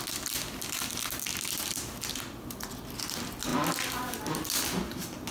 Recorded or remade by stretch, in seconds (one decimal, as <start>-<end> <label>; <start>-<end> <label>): 0.0-5.3 recorded